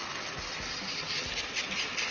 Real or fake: real